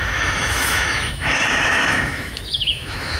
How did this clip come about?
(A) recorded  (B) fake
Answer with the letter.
B